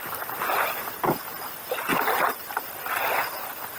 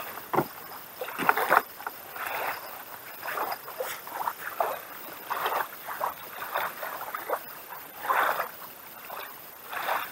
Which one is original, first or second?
first